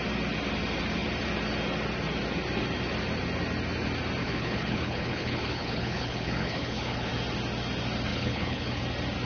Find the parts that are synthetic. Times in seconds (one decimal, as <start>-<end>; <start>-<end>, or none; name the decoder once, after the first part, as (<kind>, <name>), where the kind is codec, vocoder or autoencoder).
4.2-7.1 (codec, HILCodec); 8.1-8.8